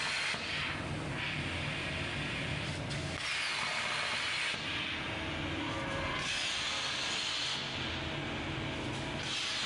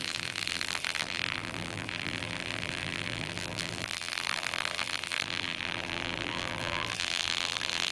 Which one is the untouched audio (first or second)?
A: first